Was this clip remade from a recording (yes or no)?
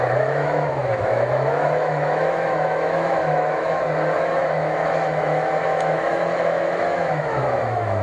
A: yes